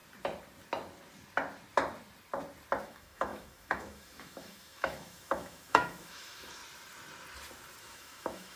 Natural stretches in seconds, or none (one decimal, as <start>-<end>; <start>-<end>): 0.0-2.8; 6.6-7.8